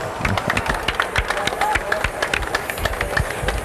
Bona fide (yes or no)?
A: yes